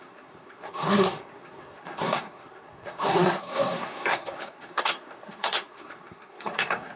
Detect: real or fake fake